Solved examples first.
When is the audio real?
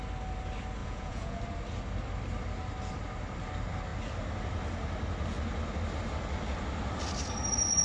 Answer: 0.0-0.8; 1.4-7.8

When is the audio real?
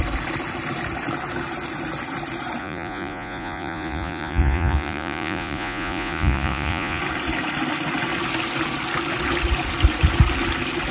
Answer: 0.0-2.6; 7.0-10.9